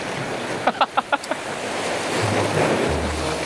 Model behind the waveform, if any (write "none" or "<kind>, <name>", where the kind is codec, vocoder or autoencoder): none